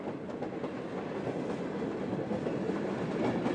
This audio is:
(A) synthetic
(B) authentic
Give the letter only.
B